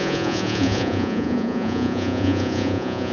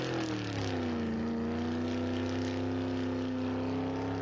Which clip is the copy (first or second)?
first